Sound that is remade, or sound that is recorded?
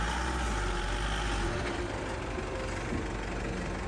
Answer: recorded